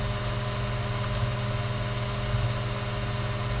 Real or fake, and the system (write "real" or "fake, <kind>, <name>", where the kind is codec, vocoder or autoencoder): real